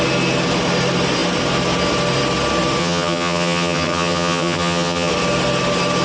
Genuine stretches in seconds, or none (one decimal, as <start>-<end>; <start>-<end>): 0.0-2.8; 5.1-6.0